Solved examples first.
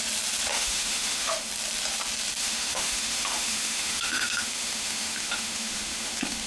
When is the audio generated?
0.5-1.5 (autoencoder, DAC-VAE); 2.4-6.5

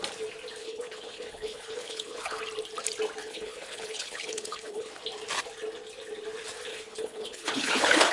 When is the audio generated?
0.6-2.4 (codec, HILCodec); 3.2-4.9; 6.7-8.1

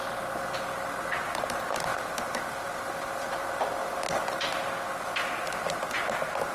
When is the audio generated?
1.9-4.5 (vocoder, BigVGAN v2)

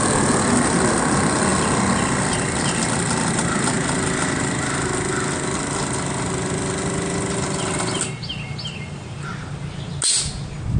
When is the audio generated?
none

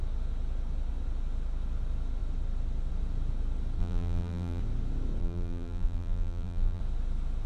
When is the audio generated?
3.8-4.6 (vocoder, BigVGAN v2); 5.2-6.8

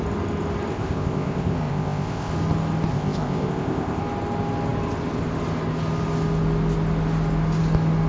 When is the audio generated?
0.7-2.3 (codec, ZipCodec); 2.9-4.0

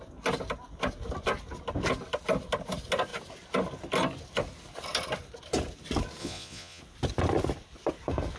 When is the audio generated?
6.2-6.8 (vocoder, Vocos)

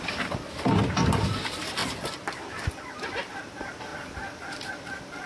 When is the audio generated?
3.9-4.7 (vocoder, BigVGAN v2)